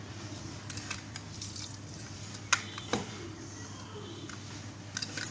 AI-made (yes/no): no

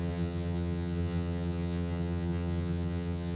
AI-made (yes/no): yes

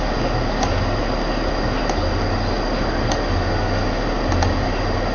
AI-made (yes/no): no